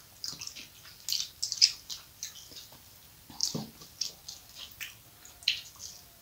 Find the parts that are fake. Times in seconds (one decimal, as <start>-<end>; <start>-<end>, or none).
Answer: 3.4-4.1